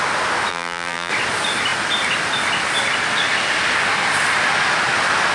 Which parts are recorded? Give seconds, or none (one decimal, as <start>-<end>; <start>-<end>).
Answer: 0.0-0.5; 1.1-5.3